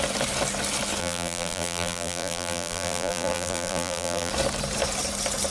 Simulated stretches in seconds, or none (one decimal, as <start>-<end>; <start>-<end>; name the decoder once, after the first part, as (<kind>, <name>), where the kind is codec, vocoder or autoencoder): 1.0-4.3 (vocoder, BigVGAN v2)